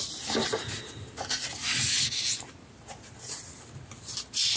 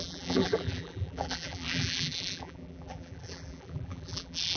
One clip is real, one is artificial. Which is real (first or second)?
first